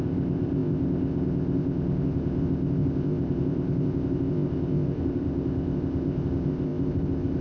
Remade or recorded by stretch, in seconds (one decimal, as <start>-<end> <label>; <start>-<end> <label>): 0.0-7.4 remade